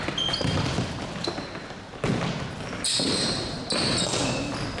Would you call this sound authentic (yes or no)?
yes